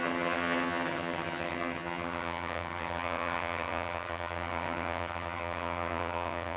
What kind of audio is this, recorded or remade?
remade